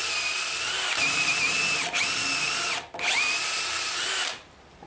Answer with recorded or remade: recorded